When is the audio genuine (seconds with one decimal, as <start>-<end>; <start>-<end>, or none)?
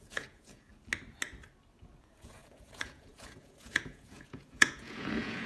0.7-2.0